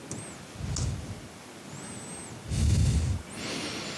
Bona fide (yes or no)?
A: yes